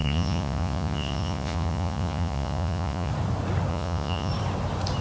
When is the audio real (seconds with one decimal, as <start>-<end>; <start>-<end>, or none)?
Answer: 3.1-3.7; 4.3-5.0